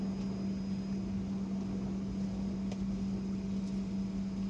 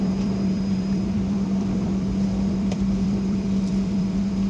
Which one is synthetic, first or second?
second